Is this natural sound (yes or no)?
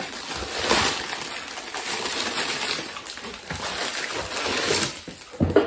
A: yes